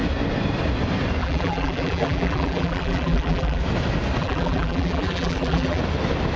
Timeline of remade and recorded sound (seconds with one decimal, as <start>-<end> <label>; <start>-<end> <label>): 0.0-1.2 recorded; 1.2-3.6 remade; 3.6-4.2 recorded; 4.2-5.8 remade; 5.8-6.4 recorded